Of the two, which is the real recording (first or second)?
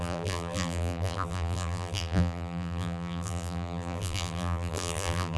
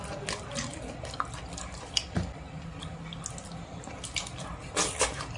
second